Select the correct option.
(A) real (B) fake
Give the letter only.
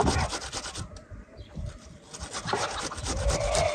A